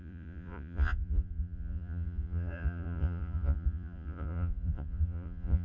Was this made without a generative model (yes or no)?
no